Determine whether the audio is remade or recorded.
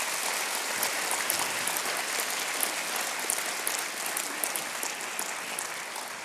recorded